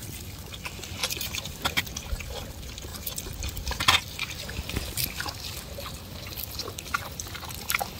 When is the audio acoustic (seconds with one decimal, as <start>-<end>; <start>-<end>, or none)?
0.0-1.0; 1.8-8.0